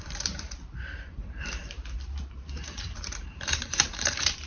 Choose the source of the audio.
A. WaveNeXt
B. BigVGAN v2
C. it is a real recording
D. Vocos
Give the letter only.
B